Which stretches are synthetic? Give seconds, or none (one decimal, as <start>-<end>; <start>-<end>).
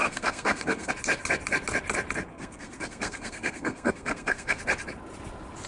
0.0-0.9; 2.3-4.6